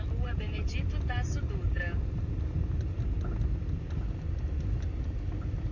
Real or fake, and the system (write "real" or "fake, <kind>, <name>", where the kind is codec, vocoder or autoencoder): real